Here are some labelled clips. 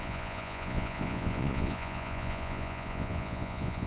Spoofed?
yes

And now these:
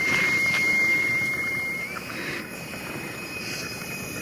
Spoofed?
yes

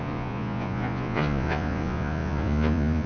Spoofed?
yes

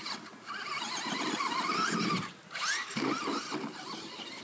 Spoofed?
no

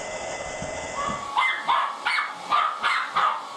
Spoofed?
no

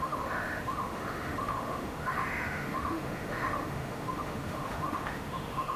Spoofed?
yes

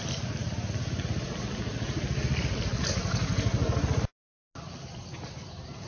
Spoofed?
no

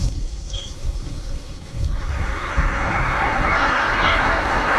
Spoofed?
yes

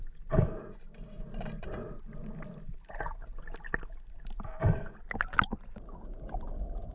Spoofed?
no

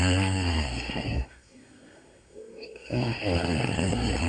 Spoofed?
yes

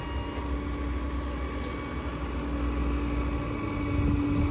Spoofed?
no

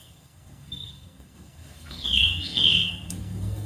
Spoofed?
yes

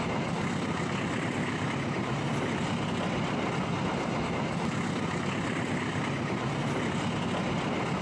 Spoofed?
no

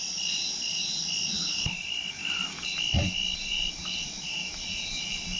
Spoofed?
no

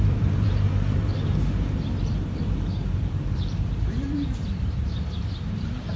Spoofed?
yes